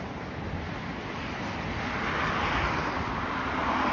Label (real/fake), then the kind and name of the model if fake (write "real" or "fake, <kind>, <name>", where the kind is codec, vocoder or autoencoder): real